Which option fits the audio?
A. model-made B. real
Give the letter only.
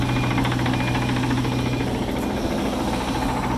B